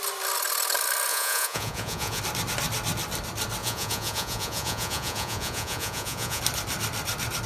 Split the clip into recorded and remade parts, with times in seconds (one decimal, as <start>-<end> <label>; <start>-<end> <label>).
0.0-1.1 recorded; 1.1-2.2 remade; 2.2-3.6 recorded; 3.6-6.4 remade; 6.4-7.5 recorded